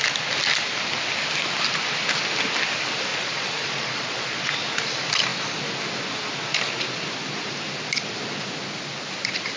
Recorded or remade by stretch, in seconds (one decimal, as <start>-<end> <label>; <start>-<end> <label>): 0.0-3.1 recorded; 3.1-4.4 remade; 4.4-9.6 recorded